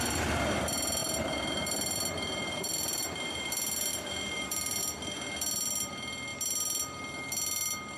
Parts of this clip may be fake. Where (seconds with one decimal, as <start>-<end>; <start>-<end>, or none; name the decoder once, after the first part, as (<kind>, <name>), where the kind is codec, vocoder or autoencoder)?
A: 1.0-3.5 (vocoder, BigVGAN v2); 3.9-4.8